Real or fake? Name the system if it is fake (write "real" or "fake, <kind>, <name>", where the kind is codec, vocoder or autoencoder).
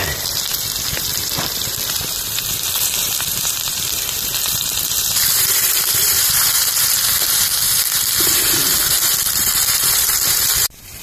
fake, vocoder, BigVGAN v2